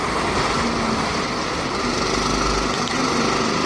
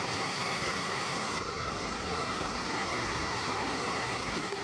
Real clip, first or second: first